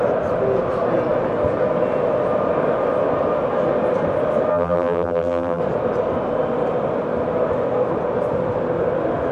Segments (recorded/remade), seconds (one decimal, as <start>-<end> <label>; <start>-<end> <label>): 0.0-4.5 recorded; 4.5-5.6 remade; 5.6-9.3 recorded